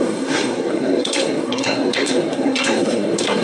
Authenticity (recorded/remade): remade